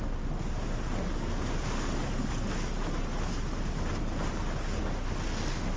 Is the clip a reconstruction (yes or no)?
no